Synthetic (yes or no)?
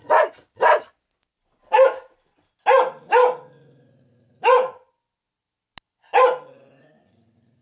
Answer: no